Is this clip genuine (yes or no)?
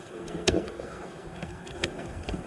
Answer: no